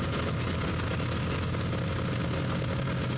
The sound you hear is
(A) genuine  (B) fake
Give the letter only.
A